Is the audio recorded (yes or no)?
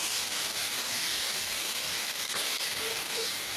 no